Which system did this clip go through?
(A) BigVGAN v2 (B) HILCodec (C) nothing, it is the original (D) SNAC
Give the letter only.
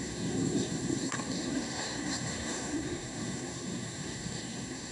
D